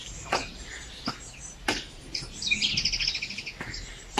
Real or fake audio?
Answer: real